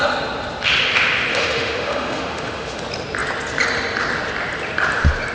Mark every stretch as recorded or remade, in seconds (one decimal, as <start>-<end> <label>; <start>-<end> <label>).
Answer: 0.0-1.3 recorded; 1.3-2.8 remade; 2.8-5.3 recorded